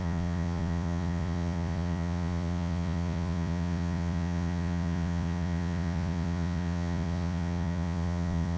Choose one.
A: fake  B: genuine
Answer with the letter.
A